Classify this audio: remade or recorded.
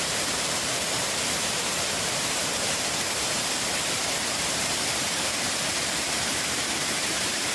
remade